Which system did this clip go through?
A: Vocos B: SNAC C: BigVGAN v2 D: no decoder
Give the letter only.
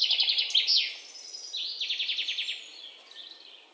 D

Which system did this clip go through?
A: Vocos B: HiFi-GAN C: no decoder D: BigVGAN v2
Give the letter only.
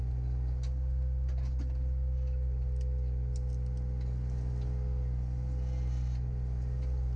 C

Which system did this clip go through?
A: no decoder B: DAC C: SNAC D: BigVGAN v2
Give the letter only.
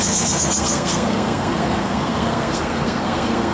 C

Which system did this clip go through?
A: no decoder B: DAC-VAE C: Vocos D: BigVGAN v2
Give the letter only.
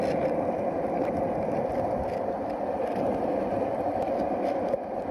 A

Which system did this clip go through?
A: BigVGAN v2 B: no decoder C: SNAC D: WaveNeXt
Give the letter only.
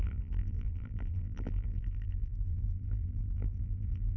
A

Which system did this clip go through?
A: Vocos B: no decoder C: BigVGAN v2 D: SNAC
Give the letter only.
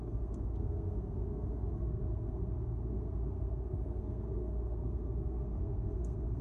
D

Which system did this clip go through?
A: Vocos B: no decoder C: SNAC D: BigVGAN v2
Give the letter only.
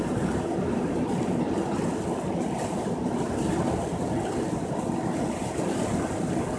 B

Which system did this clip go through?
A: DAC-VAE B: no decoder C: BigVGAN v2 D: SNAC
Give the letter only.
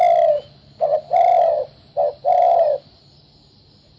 B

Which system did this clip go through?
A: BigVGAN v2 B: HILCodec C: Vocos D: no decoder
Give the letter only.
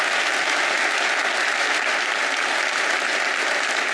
D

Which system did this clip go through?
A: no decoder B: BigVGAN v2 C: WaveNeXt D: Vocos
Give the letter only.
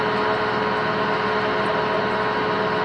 A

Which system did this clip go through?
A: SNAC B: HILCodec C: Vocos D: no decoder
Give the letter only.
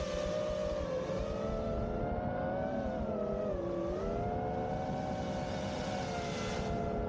D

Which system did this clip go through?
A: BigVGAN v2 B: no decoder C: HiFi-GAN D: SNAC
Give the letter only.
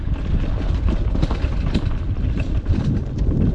B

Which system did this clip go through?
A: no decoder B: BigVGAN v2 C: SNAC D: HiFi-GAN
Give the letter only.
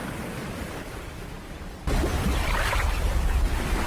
A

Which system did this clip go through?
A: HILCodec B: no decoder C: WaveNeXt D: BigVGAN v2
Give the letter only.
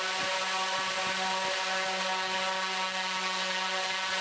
B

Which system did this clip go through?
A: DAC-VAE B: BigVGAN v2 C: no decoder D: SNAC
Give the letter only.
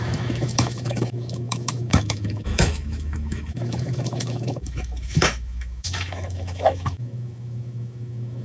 A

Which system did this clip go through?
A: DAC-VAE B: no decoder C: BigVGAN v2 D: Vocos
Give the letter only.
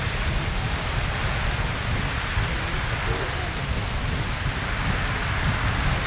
B